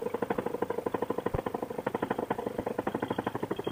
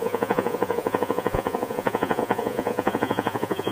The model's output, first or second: second